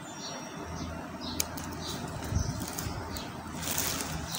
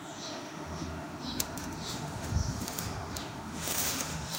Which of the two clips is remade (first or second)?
second